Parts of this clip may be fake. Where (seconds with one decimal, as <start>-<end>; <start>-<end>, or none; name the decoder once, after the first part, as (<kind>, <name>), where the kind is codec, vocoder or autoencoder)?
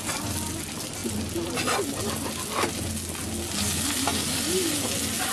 none